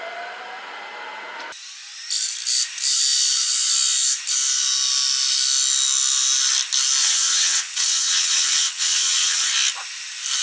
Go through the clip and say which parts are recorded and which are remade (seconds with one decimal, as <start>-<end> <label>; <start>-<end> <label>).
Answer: 0.0-7.0 recorded; 7.0-9.5 remade; 9.5-10.4 recorded